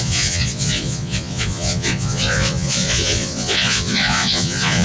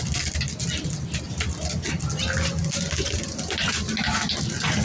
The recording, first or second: second